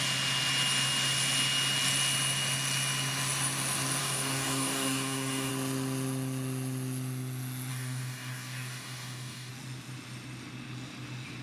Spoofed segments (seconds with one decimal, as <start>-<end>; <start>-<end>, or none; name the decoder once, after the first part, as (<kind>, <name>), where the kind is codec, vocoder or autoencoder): 4.0-5.5 (codec, DAC); 7.7-9.5